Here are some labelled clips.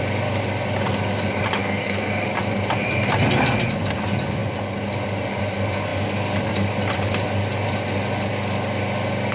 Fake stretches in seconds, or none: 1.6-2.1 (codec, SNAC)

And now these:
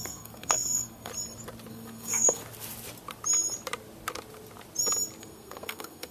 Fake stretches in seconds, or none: 0.0-1.1 (codec, SNAC); 1.7-2.4; 5.2-6.1